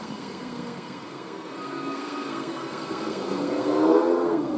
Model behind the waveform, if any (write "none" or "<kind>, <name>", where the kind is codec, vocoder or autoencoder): codec, SNAC